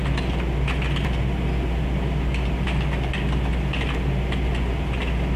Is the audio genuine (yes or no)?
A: yes